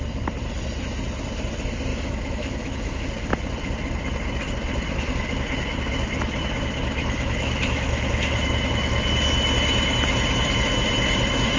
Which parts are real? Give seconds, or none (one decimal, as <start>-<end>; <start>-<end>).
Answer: 0.0-1.9; 3.0-7.0; 8.4-11.6